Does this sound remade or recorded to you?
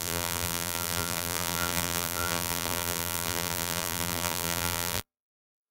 remade